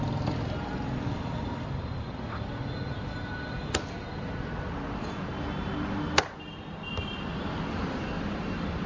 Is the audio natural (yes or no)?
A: yes